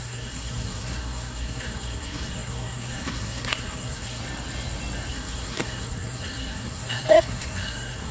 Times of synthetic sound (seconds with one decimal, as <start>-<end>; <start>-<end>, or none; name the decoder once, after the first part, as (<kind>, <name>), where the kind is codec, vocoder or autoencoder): 0.0-4.2 (codec, SNAC); 5.1-8.1